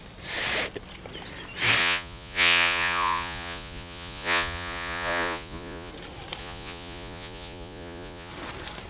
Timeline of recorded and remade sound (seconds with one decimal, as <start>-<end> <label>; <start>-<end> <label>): 0.0-1.8 recorded; 1.8-5.9 remade; 5.9-6.4 recorded; 6.4-8.3 remade; 8.3-8.9 recorded